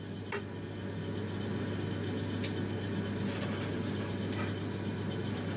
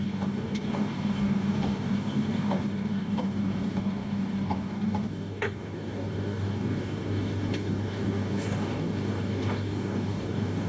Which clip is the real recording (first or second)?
first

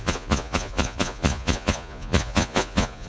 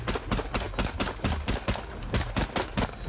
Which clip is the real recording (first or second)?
second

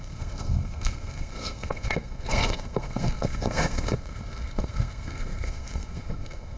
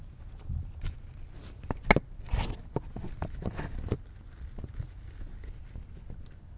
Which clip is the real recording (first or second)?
second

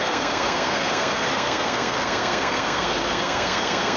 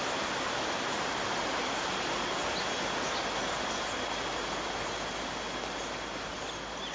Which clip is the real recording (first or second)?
second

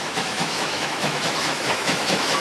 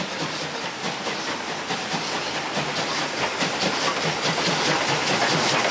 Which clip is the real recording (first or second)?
second